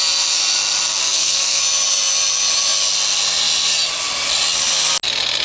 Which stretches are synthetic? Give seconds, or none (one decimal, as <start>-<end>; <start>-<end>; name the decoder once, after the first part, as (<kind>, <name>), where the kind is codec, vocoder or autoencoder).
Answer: 1.0-1.6 (codec, SNAC)